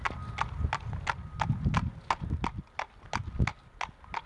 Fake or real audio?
real